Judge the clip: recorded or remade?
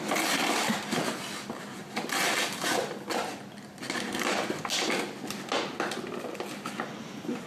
recorded